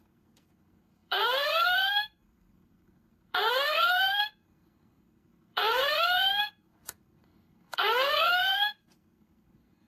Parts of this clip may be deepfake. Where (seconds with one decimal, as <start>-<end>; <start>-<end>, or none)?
0.0-9.9